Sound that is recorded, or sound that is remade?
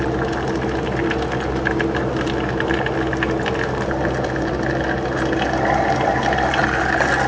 recorded